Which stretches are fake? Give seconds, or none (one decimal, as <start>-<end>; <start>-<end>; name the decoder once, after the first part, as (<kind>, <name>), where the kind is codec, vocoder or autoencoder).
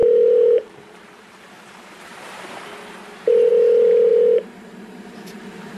0.0-3.5 (vocoder, BigVGAN v2); 4.1-5.8